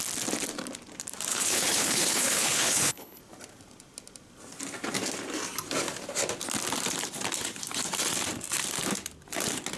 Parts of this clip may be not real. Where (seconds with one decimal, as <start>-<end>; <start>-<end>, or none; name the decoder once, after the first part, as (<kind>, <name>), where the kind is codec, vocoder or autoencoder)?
1.3-3.2 (codec, HILCodec)